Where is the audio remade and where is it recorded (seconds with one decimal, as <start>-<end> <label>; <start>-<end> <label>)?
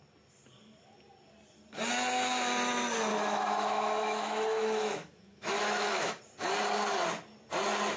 0.0-3.1 recorded; 3.1-6.2 remade; 6.2-8.0 recorded